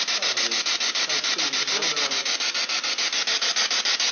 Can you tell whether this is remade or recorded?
recorded